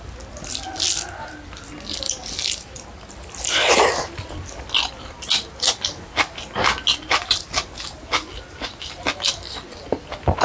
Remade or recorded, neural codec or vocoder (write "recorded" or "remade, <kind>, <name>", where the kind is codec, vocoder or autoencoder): recorded